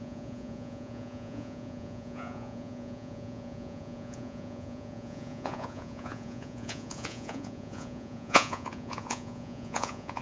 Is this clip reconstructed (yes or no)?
yes